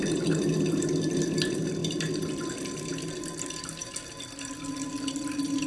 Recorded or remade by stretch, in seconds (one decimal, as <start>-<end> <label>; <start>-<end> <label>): 0.0-5.7 recorded